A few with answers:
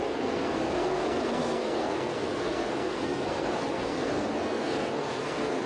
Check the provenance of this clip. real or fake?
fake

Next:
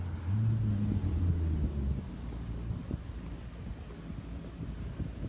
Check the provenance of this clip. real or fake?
real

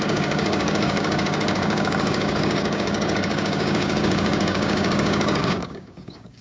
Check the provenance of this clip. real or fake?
fake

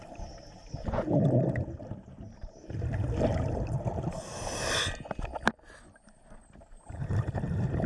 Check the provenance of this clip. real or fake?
real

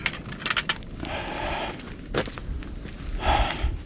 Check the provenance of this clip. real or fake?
real